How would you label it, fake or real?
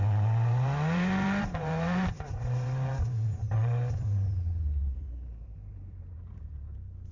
fake